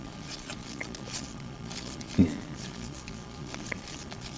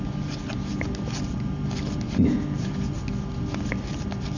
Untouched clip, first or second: second